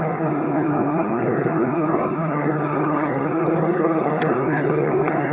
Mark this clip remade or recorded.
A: remade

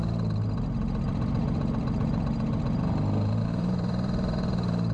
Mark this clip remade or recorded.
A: remade